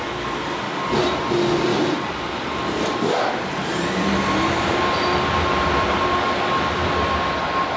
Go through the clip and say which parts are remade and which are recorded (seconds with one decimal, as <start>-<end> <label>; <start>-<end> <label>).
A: 0.0-1.7 recorded; 1.7-5.0 remade; 5.0-7.8 recorded